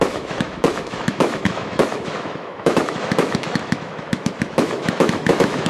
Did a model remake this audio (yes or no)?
yes